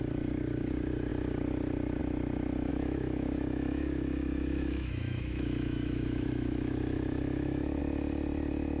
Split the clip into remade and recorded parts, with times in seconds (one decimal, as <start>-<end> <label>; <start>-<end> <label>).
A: 0.0-2.7 recorded; 2.7-7.8 remade; 7.8-8.8 recorded